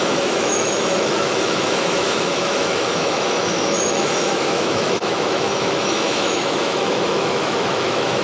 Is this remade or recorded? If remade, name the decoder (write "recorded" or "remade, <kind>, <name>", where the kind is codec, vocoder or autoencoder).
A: remade, autoencoder, DAC-VAE